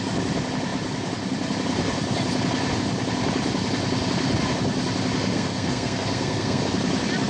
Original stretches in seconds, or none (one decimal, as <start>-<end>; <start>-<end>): 0.0-5.3; 6.6-7.3